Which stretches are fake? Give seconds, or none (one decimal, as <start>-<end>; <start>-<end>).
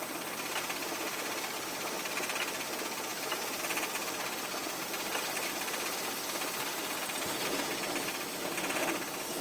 none